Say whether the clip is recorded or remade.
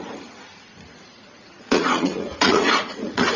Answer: remade